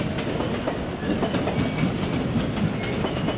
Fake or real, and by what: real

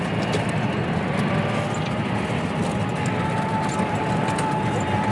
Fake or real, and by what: real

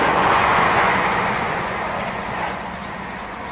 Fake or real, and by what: fake, vocoder, Vocos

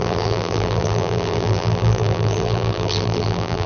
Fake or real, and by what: fake, vocoder, BigVGAN v2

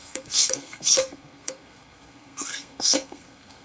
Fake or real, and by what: fake, codec, SNAC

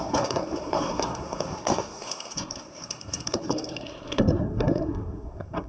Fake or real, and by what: fake, codec, SNAC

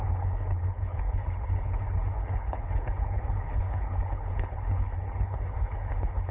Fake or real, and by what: fake, codec, HILCodec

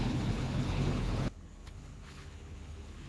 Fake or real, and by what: fake, codec, HILCodec